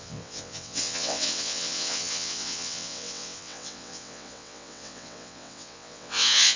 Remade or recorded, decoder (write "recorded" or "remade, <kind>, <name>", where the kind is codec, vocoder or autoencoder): remade, vocoder, WaveNeXt